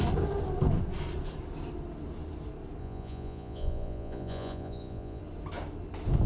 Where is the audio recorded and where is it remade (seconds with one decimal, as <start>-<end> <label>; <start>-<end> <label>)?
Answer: 0.0-2.8 recorded; 2.8-5.2 remade; 5.2-6.3 recorded